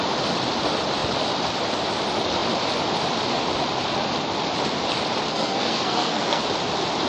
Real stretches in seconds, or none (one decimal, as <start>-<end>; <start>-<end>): 0.0-5.3; 6.4-7.1